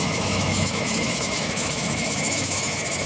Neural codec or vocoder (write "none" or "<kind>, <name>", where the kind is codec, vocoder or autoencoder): autoencoder, DAC-VAE